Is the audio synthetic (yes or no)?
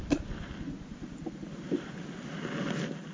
no